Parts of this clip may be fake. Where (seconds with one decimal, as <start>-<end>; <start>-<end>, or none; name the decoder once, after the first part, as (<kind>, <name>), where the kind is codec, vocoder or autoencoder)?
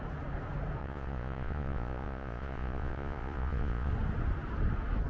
0.8-3.9 (vocoder, Vocos)